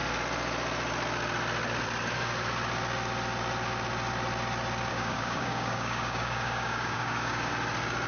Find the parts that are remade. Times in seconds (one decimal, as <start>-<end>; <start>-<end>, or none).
4.9-7.5